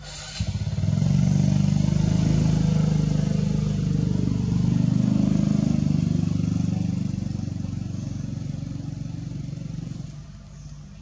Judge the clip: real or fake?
real